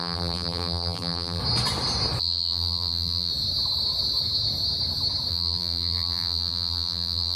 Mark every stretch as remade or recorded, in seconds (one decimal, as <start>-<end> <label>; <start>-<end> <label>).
0.0-1.4 remade; 1.4-2.2 recorded; 2.2-3.3 remade; 3.3-5.3 recorded; 5.3-7.4 remade